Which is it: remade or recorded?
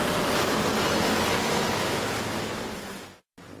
recorded